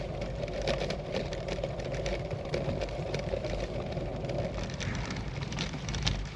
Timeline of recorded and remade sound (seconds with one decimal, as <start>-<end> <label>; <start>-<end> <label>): 0.0-4.1 remade; 4.1-5.4 recorded; 5.4-6.4 remade